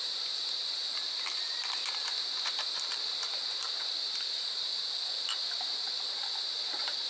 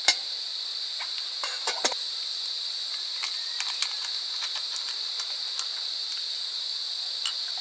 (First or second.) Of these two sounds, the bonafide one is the second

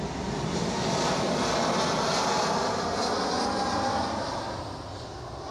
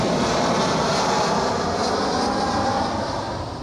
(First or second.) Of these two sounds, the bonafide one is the first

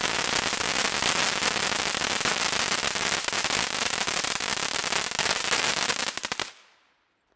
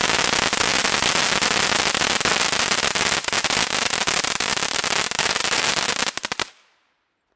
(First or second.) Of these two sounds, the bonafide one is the second